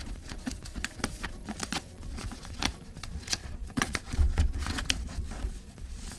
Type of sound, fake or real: fake